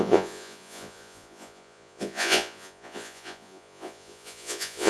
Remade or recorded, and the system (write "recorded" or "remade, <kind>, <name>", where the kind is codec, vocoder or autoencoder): remade, vocoder, Vocos